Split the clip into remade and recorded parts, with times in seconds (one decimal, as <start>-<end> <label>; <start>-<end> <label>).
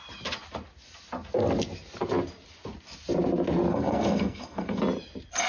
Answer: 0.0-3.7 recorded; 3.7-4.8 remade; 4.8-5.5 recorded